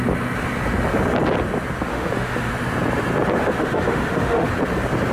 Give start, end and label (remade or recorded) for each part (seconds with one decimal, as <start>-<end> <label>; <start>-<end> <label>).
0.0-1.9 recorded; 1.9-2.5 remade; 2.5-3.4 recorded; 3.4-4.5 remade; 4.5-5.1 recorded